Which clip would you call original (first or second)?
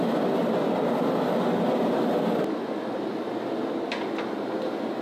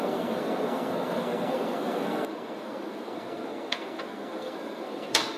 first